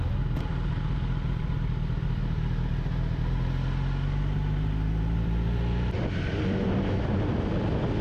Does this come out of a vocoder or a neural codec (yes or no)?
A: no